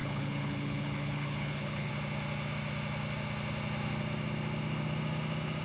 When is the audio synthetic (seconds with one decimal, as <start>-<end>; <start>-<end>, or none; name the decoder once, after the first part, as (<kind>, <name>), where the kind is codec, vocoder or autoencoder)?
0.0-1.9 (codec, HILCodec)